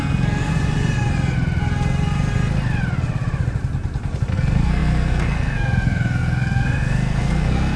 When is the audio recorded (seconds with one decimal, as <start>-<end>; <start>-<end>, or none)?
0.5-4.3